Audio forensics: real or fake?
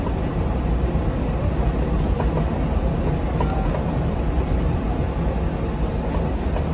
real